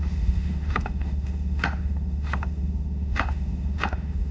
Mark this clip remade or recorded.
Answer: remade